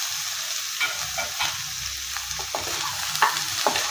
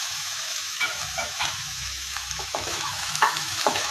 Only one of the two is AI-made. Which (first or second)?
second